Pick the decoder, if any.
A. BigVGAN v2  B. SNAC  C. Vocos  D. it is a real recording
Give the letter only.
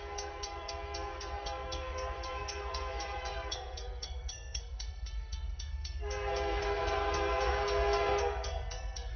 B